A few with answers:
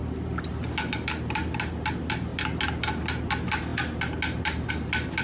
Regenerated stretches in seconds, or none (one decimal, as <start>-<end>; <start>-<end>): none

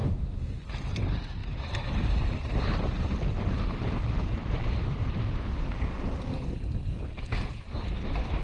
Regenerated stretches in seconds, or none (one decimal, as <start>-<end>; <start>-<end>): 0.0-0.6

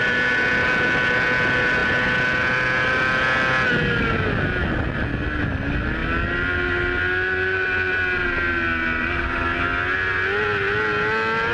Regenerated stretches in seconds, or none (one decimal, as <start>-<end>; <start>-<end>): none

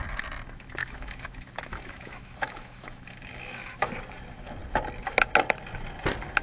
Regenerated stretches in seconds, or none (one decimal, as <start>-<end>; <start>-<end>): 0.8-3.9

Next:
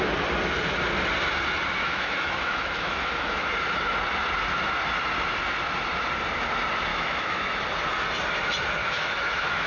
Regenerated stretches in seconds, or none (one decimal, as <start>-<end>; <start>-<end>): 1.8-3.5; 6.9-7.6; 8.8-9.7